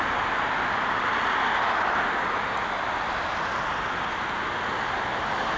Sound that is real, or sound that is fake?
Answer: real